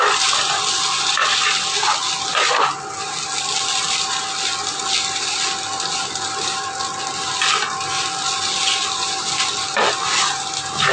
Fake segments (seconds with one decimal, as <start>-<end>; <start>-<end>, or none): none